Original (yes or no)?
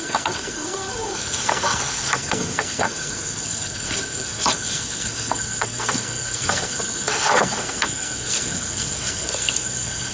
no